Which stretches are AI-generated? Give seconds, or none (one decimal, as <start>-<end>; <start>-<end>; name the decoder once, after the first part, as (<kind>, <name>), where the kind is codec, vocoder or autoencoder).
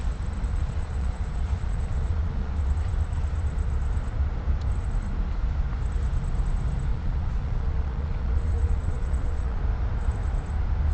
0.5-2.5 (vocoder, Vocos); 6.9-9.6